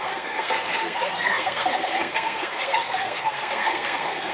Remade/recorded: remade